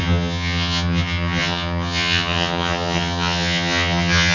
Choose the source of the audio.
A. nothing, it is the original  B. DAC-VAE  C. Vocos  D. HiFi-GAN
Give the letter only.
D